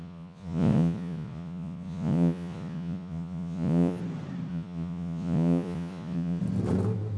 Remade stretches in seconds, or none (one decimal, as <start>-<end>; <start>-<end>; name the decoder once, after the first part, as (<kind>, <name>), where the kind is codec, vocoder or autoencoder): 0.0-4.0 (vocoder, Vocos); 4.5-6.4